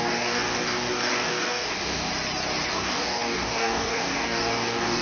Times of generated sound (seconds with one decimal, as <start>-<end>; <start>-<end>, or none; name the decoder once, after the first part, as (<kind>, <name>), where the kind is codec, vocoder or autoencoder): 0.0-2.1 (codec, DAC); 2.7-5.0